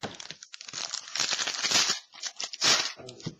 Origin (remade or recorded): recorded